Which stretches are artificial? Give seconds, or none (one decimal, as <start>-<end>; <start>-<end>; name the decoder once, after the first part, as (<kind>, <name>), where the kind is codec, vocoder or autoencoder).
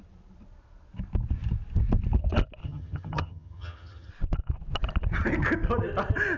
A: 2.6-4.1 (vocoder, HiFi-GAN)